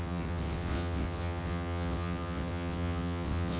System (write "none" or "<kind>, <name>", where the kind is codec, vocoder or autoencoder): vocoder, WaveNeXt